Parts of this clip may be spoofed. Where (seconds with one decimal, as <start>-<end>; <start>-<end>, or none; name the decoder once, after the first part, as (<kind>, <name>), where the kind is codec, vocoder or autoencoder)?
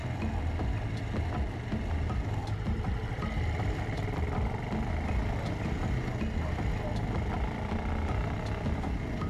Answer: none